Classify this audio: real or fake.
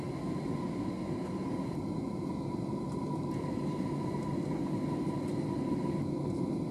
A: real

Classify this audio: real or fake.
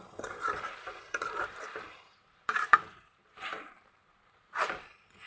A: fake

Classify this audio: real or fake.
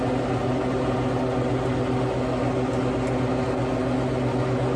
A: real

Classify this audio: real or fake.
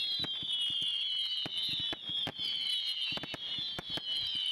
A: real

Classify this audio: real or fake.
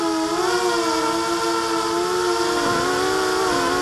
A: real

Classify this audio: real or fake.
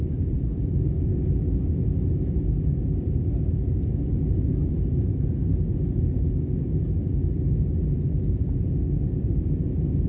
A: real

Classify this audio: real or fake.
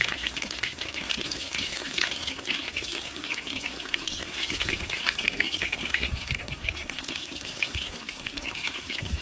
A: fake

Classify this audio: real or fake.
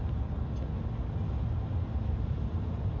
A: real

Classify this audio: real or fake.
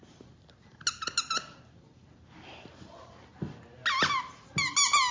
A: real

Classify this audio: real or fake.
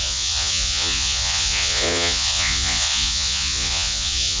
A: fake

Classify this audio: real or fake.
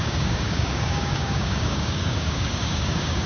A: fake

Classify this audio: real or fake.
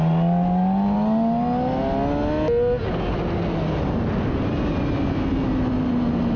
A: real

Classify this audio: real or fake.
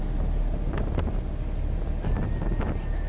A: real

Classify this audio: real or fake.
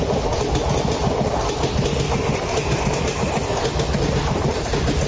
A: real